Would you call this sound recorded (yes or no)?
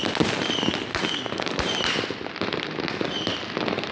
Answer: yes